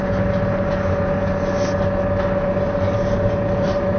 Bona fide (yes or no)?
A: yes